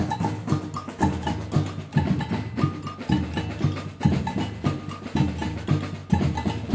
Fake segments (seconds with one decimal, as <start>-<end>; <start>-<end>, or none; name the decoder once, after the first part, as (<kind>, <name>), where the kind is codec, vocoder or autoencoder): none